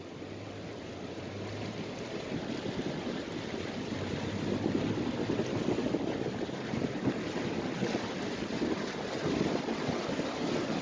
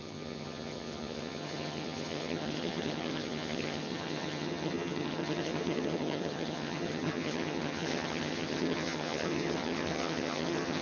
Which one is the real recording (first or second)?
first